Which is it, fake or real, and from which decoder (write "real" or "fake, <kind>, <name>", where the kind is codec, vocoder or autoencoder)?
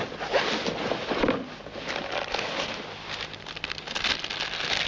real